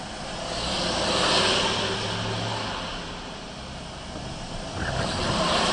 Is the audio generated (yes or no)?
no